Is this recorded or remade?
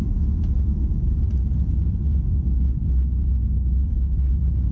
recorded